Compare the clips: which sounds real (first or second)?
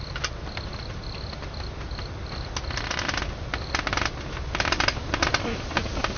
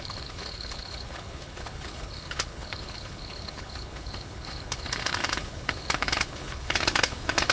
first